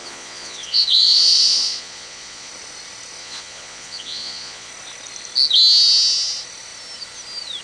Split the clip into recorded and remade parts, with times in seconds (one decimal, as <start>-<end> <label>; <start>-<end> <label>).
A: 0.0-2.5 remade; 2.5-3.2 recorded; 3.2-4.7 remade; 4.7-7.6 recorded